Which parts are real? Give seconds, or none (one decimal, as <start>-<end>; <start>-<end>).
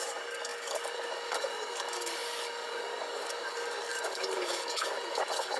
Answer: none